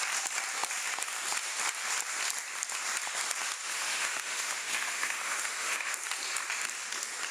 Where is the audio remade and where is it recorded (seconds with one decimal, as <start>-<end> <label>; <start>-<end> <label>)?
0.0-3.6 recorded; 3.6-5.9 remade; 5.9-7.3 recorded